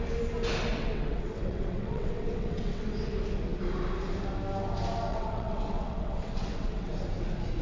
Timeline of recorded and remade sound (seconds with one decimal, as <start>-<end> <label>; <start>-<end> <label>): 0.0-0.7 recorded; 0.7-3.1 remade; 3.1-5.1 recorded; 5.1-6.9 remade; 6.9-7.6 recorded